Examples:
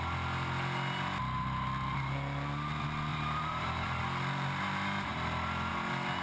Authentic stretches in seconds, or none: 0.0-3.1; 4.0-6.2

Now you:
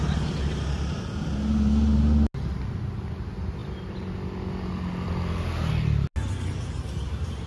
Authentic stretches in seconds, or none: 0.0-7.5

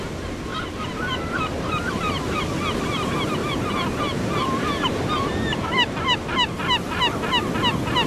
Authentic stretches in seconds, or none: 0.0-0.5; 2.4-3.4; 5.0-5.5; 6.3-8.1

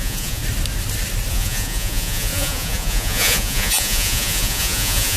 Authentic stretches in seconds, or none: 0.4-1.3